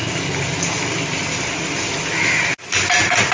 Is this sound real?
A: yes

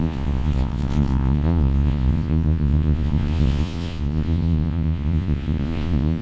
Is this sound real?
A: no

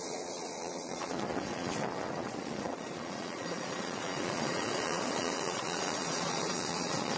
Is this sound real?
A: no